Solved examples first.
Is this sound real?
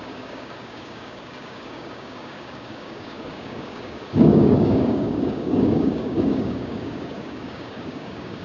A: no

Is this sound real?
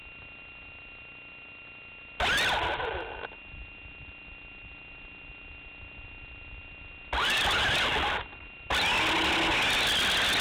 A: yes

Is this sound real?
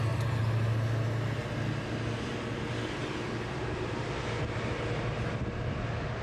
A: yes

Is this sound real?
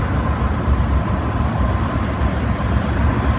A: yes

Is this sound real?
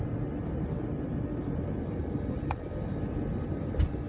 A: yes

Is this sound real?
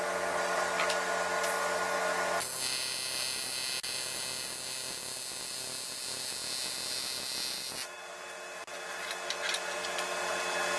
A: yes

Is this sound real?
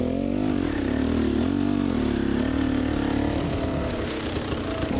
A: yes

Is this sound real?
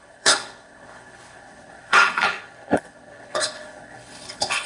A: no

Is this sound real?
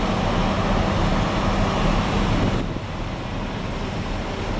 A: yes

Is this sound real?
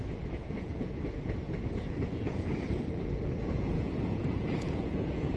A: no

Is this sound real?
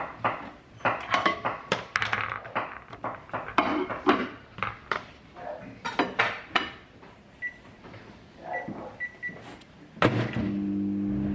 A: yes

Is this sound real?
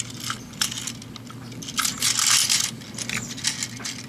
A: yes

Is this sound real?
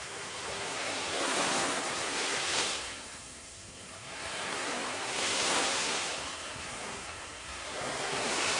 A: no